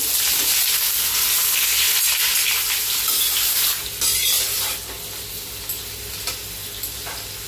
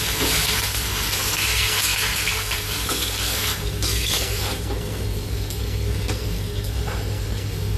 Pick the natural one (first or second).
first